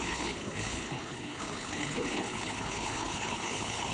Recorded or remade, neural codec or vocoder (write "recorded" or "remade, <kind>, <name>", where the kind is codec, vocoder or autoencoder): remade, codec, HILCodec